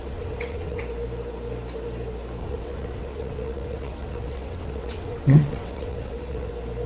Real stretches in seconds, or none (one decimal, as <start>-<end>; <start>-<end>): 0.8-2.4; 6.5-6.9